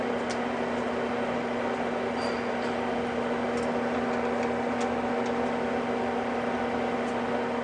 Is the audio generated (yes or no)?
no